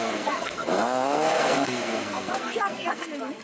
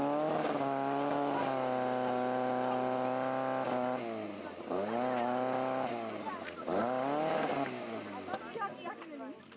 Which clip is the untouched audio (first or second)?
second